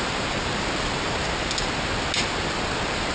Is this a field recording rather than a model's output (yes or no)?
yes